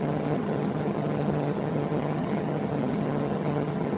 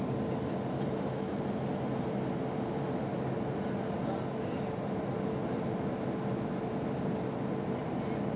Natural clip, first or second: second